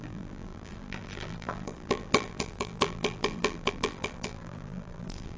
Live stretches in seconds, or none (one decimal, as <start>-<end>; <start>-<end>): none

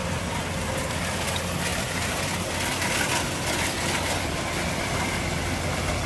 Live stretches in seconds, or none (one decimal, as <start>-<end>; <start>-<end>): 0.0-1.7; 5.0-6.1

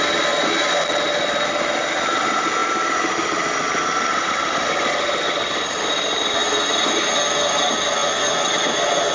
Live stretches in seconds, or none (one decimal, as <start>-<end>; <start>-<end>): 0.0-2.6; 4.5-8.0